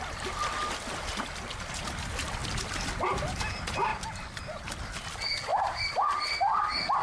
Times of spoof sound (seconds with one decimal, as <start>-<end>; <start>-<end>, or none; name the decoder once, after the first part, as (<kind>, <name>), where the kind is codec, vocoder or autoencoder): 0.4-1.8 (vocoder, BigVGAN v2); 5.5-6.6